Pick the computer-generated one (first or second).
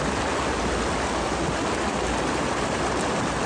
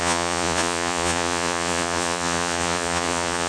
second